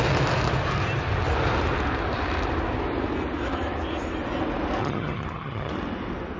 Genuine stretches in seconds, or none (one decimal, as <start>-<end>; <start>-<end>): 0.0-4.8; 5.7-6.4